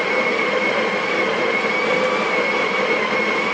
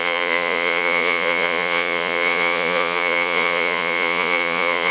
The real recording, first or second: first